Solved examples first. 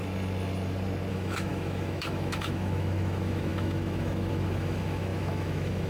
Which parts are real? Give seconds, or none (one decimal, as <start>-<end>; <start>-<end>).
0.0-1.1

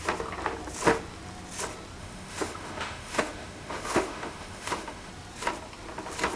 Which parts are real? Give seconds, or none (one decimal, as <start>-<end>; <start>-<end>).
0.0-2.0; 5.1-6.4

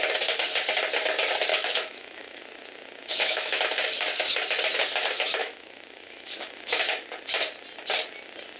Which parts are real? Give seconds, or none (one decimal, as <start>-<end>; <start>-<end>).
0.0-1.5; 2.4-3.0; 3.6-5.4; 6.9-8.6

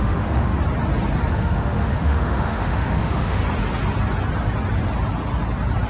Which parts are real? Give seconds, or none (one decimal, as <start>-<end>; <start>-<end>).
0.5-1.3; 3.4-5.9

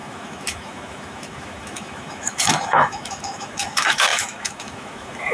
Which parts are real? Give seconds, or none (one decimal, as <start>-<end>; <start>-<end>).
none

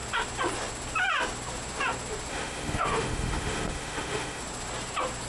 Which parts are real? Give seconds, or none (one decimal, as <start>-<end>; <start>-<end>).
0.0-2.3; 4.4-5.3

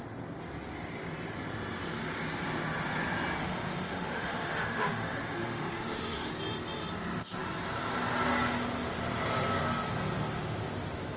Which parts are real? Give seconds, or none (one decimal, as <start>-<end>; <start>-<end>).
0.0-3.4; 6.3-11.2

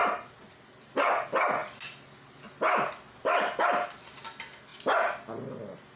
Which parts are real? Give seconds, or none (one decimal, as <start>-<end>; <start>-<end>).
0.0-6.0